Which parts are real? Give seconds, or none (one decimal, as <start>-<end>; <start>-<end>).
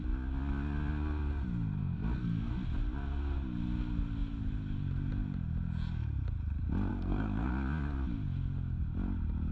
0.0-1.8; 2.5-6.9; 7.5-9.5